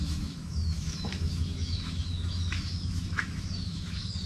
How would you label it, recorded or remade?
remade